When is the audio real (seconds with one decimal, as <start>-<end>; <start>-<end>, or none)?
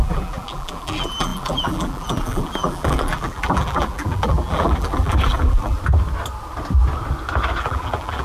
5.8-7.6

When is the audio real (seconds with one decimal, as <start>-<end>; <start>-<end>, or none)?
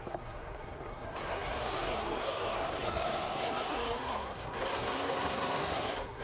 none